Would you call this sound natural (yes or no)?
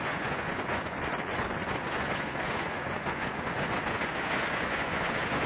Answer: no